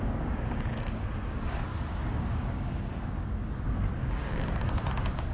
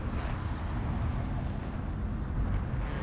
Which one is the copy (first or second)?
first